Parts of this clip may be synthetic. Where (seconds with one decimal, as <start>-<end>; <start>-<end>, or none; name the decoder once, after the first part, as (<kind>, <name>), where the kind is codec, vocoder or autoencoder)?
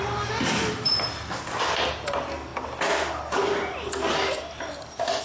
none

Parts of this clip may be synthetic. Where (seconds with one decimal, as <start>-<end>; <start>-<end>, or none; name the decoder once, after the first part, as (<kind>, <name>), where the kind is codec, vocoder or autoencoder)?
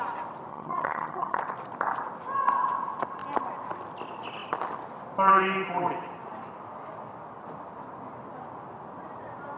0.5-1.4 (vocoder, HiFi-GAN)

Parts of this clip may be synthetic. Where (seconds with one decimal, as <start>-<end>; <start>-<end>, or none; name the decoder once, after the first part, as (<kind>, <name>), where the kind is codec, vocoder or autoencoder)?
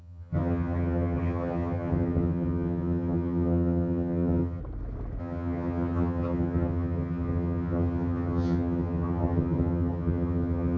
0.0-4.6 (vocoder, HiFi-GAN); 5.2-10.8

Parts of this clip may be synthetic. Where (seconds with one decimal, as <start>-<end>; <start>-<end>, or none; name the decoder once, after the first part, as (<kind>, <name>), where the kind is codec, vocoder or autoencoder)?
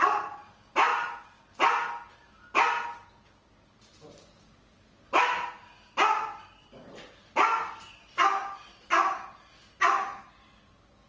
none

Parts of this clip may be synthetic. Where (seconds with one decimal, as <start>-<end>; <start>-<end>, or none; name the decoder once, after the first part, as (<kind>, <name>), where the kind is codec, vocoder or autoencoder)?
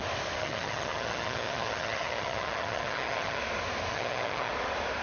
0.4-3.4 (vocoder, HiFi-GAN); 3.9-4.5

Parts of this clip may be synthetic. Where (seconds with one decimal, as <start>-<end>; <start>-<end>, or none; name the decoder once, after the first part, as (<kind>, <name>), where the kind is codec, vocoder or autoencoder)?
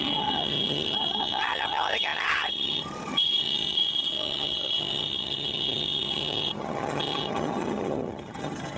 0.0-8.8 (vocoder, HiFi-GAN)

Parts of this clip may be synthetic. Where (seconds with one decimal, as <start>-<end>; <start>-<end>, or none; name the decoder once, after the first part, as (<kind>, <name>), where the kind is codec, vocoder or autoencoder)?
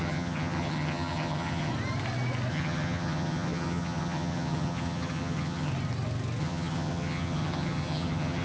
0.0-1.7 (vocoder, HiFi-GAN); 2.5-5.7; 6.4-8.4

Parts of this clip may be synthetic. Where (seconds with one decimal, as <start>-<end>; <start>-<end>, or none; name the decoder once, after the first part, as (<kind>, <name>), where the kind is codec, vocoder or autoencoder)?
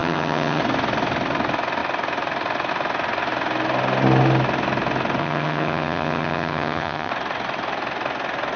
0.0-0.6 (vocoder, HiFi-GAN); 5.2-7.1